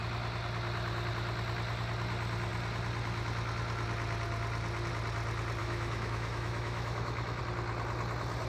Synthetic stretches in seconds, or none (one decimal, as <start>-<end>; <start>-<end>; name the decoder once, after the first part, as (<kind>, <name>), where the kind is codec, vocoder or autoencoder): 5.6-7.4 (autoencoder, DAC-VAE)